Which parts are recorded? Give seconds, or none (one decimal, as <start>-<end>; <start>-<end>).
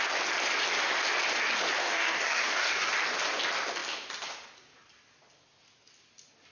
0.0-1.8; 2.9-6.5